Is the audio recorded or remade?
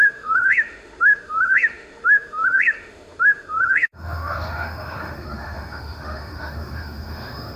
remade